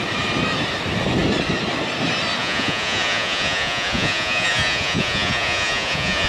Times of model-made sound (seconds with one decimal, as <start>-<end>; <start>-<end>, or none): 2.4-6.3